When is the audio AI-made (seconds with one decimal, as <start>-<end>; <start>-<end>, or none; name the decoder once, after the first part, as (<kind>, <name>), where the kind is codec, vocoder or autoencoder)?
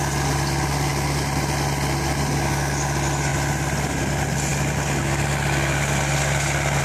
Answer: none